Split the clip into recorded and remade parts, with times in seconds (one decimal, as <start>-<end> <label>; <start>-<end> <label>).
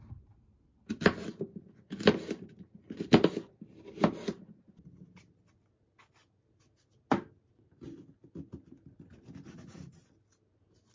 0.0-10.9 recorded